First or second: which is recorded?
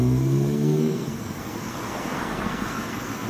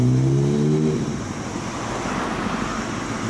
second